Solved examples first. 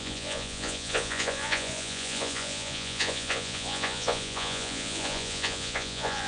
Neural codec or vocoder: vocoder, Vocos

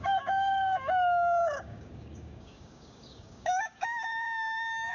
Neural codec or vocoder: codec, DAC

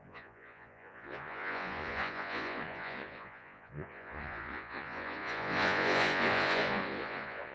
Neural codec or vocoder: vocoder, Vocos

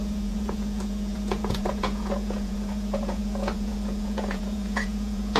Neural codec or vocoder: vocoder, Vocos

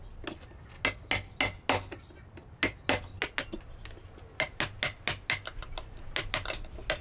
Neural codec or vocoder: none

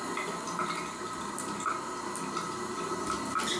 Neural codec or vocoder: none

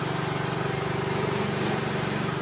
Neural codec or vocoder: vocoder, BigVGAN v2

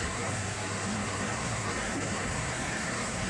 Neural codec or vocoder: codec, SNAC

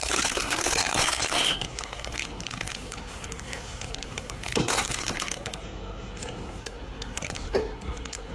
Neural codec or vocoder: codec, SNAC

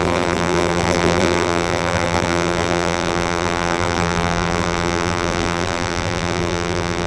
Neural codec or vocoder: vocoder, BigVGAN v2